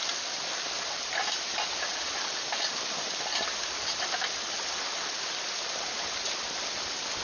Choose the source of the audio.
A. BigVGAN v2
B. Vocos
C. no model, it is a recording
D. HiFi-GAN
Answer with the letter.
C